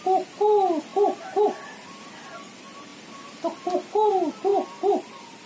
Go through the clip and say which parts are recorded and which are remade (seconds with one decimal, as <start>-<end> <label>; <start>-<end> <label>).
0.0-5.5 recorded